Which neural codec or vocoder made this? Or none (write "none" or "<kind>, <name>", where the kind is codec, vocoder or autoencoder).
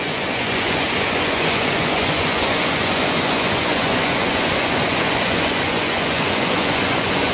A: vocoder, Vocos